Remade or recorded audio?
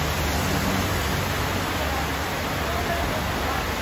recorded